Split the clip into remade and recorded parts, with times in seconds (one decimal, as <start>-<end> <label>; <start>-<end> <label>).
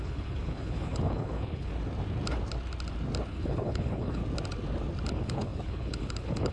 0.0-1.7 remade; 1.7-3.3 recorded; 3.3-4.2 remade; 4.2-5.1 recorded; 5.1-6.5 remade